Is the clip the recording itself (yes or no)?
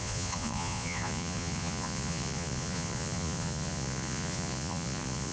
no